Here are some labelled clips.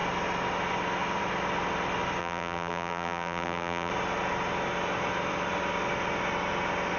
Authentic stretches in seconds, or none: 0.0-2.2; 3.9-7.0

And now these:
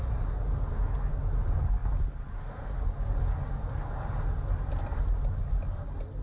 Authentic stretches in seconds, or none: 0.0-6.2

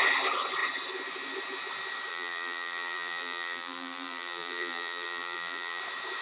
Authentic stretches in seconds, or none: 0.0-2.1; 5.8-6.2

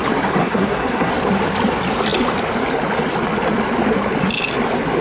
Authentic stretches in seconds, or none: 0.0-0.4; 1.1-5.0

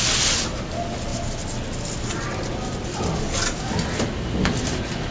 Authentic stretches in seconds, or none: 0.0-5.1

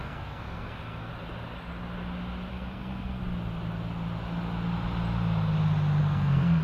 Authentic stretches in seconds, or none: 1.1-2.5; 3.2-6.0

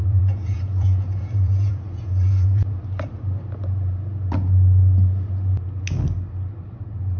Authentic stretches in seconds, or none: 2.8-7.2